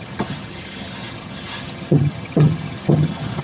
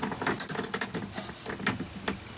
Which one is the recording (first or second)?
second